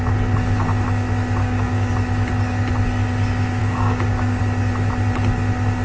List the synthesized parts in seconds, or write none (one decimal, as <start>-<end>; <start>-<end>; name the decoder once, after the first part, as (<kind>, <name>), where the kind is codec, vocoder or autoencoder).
1.4-1.9 (codec, DAC); 3.6-4.4